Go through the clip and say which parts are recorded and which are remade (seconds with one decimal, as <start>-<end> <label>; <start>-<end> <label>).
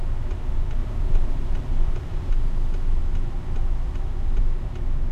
0.0-0.8 recorded; 0.8-2.3 remade; 2.3-5.1 recorded